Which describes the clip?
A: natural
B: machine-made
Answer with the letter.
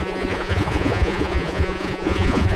B